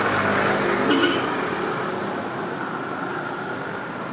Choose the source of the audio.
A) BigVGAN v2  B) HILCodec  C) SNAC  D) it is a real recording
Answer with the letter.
D